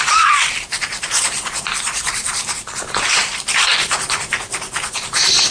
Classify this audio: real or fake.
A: fake